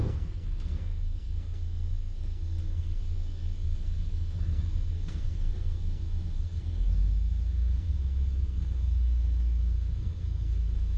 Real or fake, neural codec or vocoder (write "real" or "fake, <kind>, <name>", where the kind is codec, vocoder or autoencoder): fake, codec, SNAC